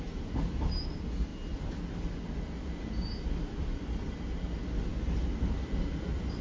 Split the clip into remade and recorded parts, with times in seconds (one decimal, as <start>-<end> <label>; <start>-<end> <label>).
0.0-6.4 recorded